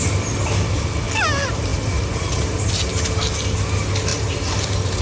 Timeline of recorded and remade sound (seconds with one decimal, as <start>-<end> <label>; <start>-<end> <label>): 0.0-1.7 recorded; 1.7-2.7 remade; 2.7-4.1 recorded; 4.1-5.0 remade